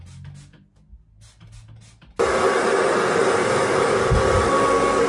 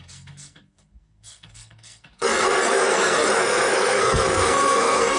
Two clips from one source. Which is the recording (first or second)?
first